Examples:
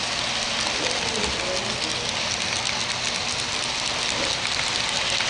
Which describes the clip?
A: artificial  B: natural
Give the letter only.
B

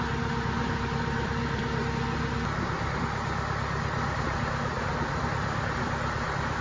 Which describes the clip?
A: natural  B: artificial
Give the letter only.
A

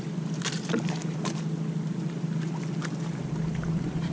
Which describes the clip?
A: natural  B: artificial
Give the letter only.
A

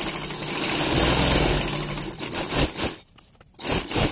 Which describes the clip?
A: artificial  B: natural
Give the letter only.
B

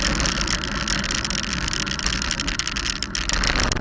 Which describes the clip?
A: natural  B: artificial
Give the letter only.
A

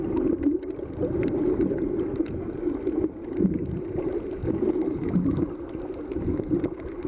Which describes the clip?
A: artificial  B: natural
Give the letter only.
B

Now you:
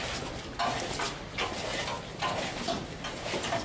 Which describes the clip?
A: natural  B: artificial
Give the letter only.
A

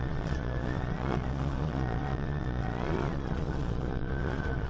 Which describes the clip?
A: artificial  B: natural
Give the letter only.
A